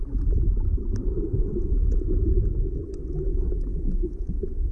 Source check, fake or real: real